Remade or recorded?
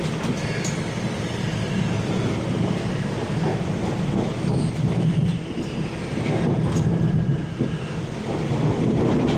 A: recorded